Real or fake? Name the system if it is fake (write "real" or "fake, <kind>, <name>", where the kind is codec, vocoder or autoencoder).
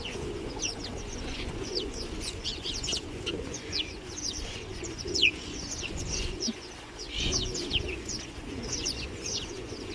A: fake, vocoder, Vocos